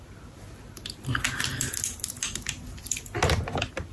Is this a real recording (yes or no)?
yes